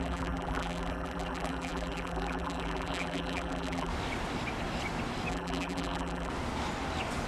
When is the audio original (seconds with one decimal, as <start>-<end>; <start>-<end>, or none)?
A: 3.9-5.3; 6.3-7.3